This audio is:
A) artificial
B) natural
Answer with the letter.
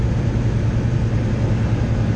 B